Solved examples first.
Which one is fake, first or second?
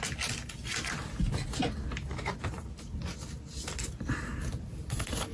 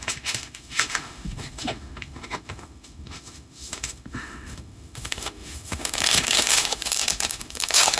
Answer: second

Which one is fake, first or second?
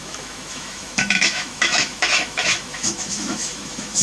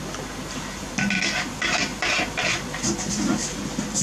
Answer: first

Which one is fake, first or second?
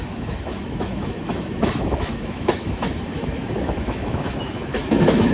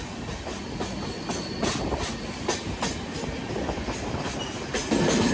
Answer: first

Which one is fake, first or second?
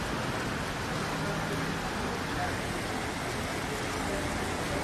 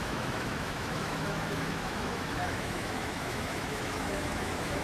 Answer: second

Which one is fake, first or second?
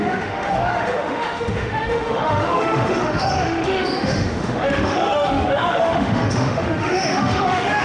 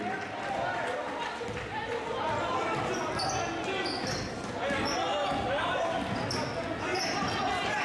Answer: first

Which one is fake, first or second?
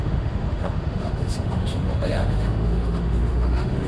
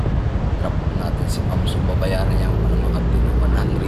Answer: first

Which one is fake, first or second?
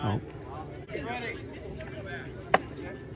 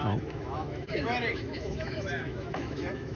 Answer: second